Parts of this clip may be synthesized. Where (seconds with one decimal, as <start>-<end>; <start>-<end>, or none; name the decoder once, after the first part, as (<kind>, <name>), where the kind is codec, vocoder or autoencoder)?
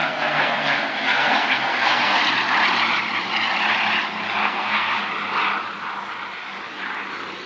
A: 0.0-2.2 (codec, SNAC); 4.4-5.0